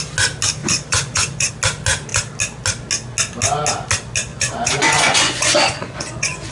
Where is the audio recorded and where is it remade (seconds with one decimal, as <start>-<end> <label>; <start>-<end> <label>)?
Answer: 0.0-0.6 recorded; 0.6-1.5 remade; 1.5-4.3 recorded; 4.3-6.5 remade